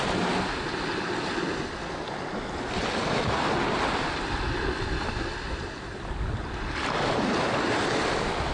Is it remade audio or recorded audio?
recorded